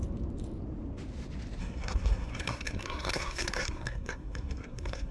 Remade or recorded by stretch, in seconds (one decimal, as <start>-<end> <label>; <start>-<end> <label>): 0.0-1.6 recorded; 1.6-5.1 remade